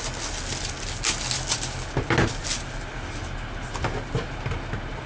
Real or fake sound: real